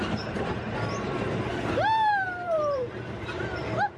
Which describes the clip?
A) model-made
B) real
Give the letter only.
A